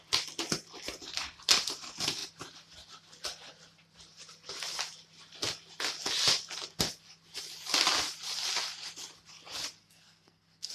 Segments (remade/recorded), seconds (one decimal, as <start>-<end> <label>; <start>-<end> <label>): 0.0-9.8 recorded; 9.8-10.7 remade